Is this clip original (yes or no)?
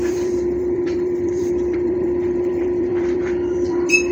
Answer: no